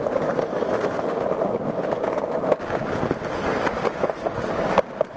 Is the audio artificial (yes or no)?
no